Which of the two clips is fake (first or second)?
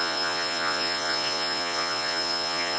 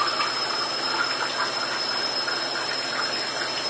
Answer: first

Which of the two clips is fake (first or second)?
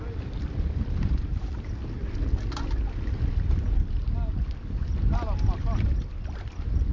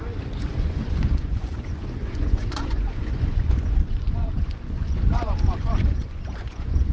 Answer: second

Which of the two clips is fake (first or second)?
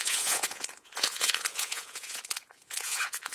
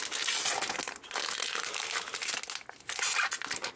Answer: first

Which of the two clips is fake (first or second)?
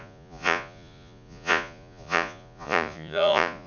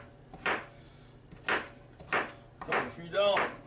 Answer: first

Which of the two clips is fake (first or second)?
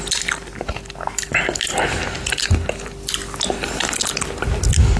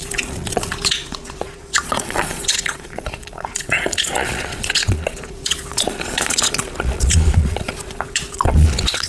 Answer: second